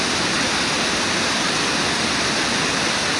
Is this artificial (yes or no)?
no